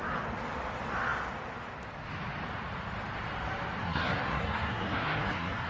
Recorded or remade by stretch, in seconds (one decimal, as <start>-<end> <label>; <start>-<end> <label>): 0.0-3.8 recorded; 3.8-5.7 remade